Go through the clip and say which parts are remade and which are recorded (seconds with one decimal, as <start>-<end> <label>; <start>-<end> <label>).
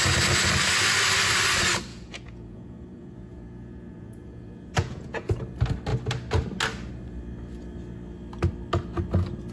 0.0-1.9 recorded; 1.9-5.4 remade; 5.4-9.5 recorded